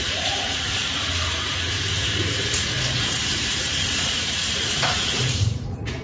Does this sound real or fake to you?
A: fake